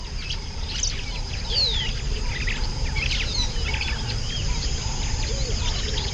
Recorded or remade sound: recorded